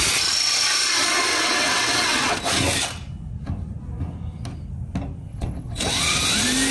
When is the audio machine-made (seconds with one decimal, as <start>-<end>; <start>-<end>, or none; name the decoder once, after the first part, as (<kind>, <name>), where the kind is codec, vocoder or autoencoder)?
1.3-2.4 (vocoder, WaveNeXt); 5.3-6.2